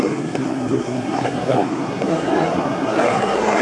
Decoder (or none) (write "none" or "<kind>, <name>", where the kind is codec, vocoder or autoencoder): codec, SNAC